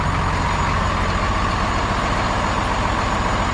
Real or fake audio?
real